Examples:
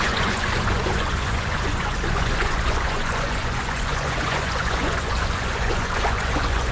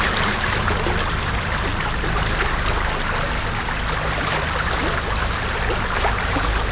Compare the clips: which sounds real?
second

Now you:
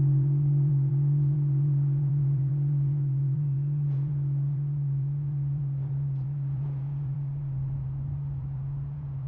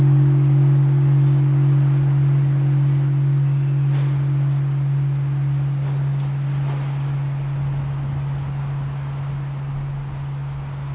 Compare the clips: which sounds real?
second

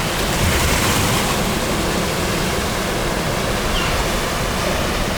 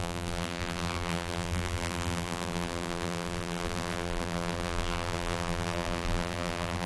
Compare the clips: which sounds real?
first